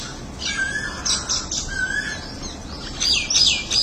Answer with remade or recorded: recorded